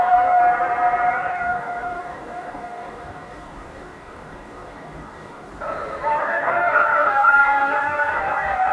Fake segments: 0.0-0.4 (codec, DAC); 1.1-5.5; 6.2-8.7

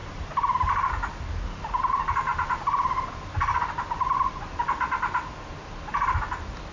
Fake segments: none

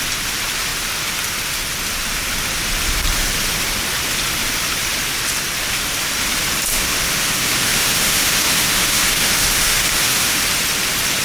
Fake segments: 6.7-10.4 (autoencoder, DAC-VAE)